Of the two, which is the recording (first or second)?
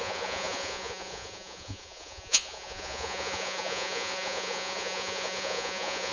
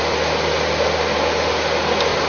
second